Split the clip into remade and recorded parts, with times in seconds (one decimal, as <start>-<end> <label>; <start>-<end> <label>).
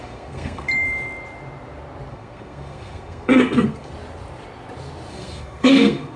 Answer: 0.0-0.7 remade; 0.7-2.1 recorded; 2.1-3.9 remade; 3.9-5.1 recorded; 5.1-6.2 remade